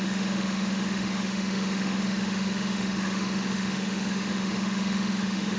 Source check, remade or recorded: remade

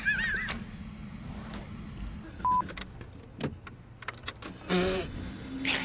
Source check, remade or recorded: recorded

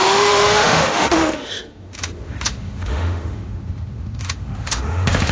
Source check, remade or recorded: remade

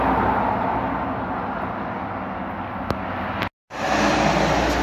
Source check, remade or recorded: recorded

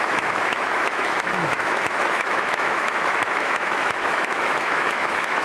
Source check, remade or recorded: remade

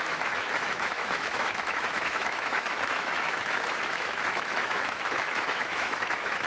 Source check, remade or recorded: remade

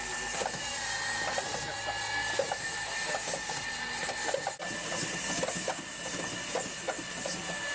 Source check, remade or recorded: recorded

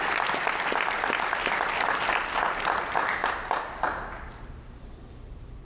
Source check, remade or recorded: recorded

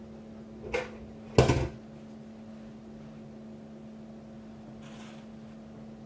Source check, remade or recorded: recorded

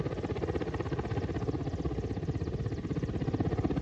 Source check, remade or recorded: recorded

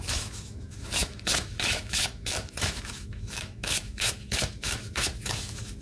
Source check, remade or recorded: remade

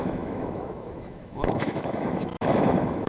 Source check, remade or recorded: remade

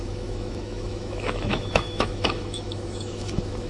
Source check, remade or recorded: remade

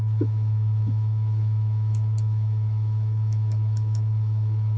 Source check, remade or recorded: remade